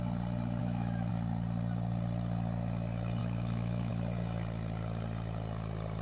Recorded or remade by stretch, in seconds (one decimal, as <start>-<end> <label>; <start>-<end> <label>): 0.0-0.6 recorded; 0.6-1.1 remade; 1.1-3.2 recorded; 3.2-3.9 remade; 3.9-6.0 recorded